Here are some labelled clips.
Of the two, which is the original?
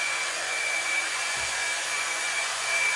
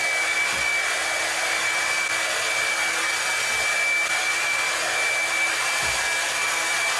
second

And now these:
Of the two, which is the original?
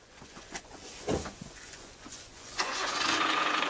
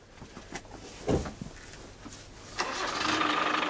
second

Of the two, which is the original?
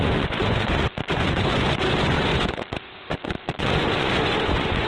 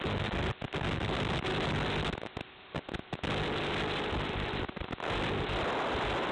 second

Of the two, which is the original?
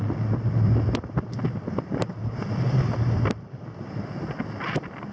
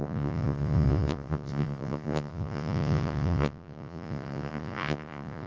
first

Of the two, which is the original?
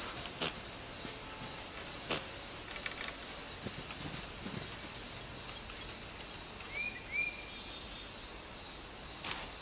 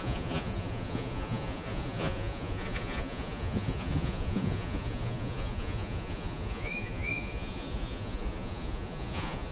first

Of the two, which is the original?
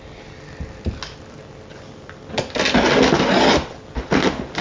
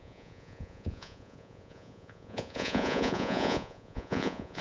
first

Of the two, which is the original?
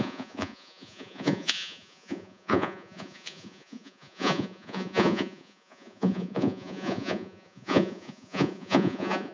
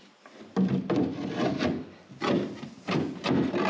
second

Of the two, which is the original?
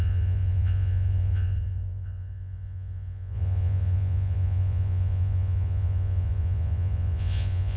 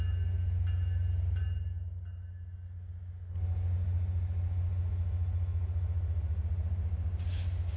second